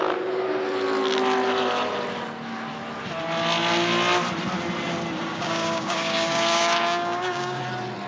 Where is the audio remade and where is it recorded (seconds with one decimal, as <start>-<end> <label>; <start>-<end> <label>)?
0.0-5.3 recorded; 5.3-7.6 remade; 7.6-8.1 recorded